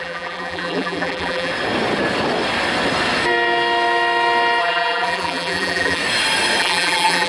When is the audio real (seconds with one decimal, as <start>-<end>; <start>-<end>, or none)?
1.5-4.6; 6.0-6.6